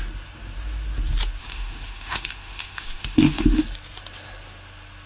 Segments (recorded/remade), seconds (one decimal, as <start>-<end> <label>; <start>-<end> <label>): 0.0-1.4 recorded; 1.4-3.6 remade; 3.6-5.1 recorded